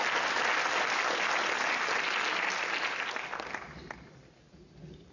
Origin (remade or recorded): recorded